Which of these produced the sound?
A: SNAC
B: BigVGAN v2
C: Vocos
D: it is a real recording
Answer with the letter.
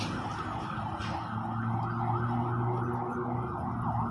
D